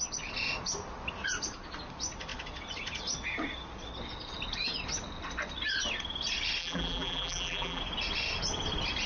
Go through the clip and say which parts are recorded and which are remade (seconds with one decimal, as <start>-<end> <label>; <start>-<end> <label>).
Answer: 0.0-6.6 recorded; 6.6-7.8 remade; 7.8-9.1 recorded